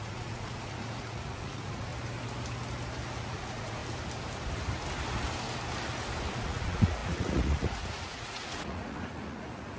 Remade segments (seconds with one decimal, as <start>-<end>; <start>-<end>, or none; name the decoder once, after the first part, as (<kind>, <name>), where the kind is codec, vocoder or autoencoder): 0.0-1.9 (vocoder, Vocos); 3.2-3.8; 6.4-9.8